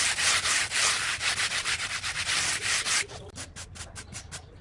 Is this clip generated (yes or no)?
no